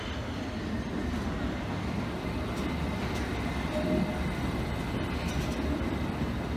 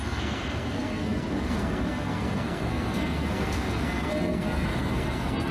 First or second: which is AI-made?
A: second